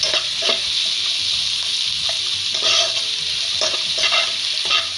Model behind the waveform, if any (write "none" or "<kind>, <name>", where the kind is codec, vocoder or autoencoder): none